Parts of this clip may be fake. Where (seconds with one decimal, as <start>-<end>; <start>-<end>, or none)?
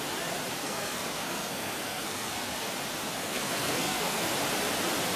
0.6-2.7; 3.2-4.3